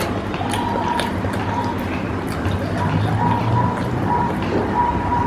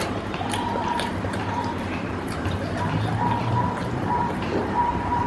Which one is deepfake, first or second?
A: second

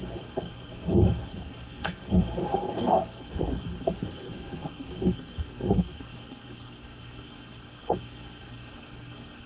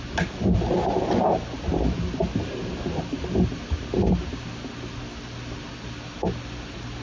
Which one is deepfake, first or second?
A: first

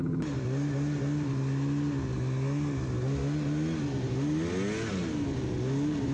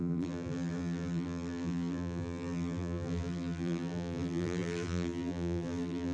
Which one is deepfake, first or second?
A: second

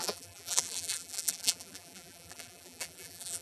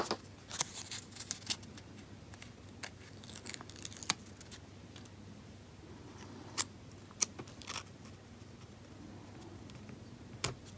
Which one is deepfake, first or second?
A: first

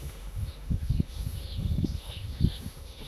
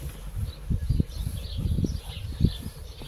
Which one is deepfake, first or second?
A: first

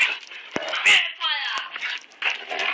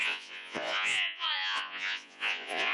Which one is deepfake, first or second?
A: second